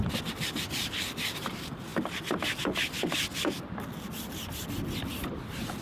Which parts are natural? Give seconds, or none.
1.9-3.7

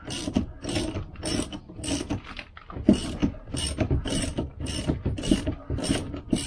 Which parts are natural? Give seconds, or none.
0.0-3.2

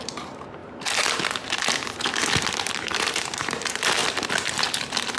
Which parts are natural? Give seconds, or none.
0.6-2.7; 4.0-5.2

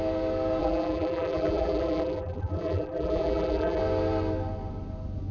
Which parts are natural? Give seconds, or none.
0.0-0.6; 3.8-5.3

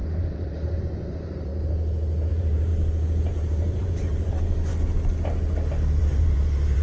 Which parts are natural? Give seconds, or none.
1.5-2.3; 2.7-3.3; 4.7-6.0

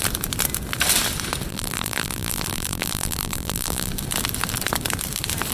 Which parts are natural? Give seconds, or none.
0.0-1.5; 3.9-5.5